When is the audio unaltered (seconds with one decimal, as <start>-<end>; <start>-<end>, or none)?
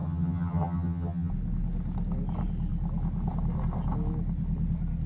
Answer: 1.3-5.1